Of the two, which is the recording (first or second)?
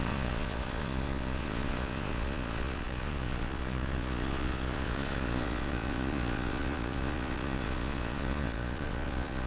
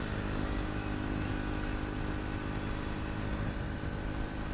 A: second